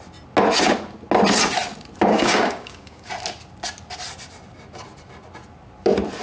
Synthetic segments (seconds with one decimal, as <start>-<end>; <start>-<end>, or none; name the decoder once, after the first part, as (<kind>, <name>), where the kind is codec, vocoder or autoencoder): 2.1-3.1 (codec, DAC)